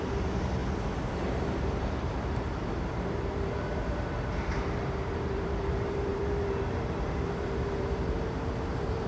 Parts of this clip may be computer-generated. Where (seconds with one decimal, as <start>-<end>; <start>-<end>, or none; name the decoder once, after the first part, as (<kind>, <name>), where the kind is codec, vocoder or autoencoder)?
0.0-9.1 (vocoder, BigVGAN v2)